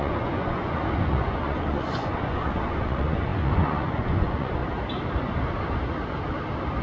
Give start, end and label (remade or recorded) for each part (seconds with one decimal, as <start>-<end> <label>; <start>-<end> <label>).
0.0-4.6 remade; 4.6-6.8 recorded